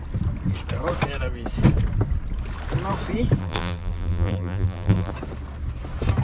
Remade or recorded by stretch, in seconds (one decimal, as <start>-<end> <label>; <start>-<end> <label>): 0.0-3.4 recorded; 3.4-5.1 remade; 5.1-6.2 recorded